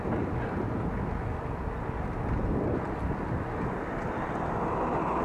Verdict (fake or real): fake